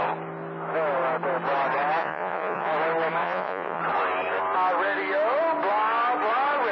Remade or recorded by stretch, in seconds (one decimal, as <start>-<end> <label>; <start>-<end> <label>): 0.0-2.0 recorded; 2.0-2.7 remade; 2.7-3.2 recorded; 3.2-3.8 remade; 3.8-6.7 recorded